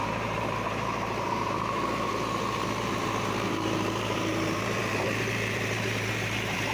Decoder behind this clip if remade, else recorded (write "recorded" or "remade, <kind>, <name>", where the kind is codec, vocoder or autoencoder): remade, vocoder, BigVGAN v2